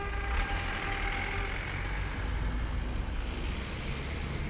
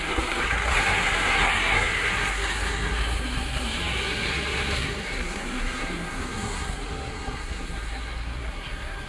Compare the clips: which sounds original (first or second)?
first